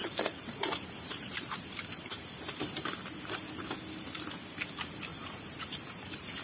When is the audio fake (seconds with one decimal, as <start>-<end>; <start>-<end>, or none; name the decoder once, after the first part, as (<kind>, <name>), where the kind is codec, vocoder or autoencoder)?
0.0-3.8 (vocoder, BigVGAN v2); 5.1-6.4